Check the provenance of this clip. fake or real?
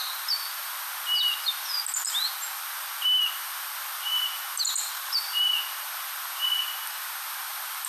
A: real